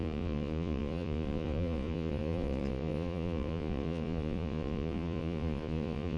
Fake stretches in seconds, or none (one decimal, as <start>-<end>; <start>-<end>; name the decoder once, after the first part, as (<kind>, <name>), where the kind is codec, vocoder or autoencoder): 0.0-6.2 (vocoder, Vocos)